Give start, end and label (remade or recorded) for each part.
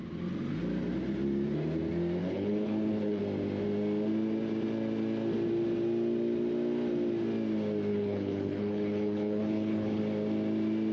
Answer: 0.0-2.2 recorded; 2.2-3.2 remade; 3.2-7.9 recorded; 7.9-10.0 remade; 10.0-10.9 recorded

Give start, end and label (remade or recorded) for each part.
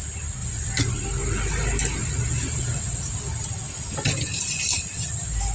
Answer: 0.0-5.5 recorded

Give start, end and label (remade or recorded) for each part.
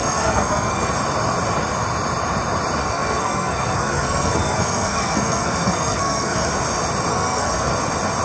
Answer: 0.0-0.9 remade; 0.9-2.8 recorded; 2.8-6.5 remade; 6.5-7.1 recorded; 7.1-7.7 remade; 7.7-8.2 recorded